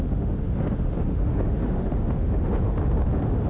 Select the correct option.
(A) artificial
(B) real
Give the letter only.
A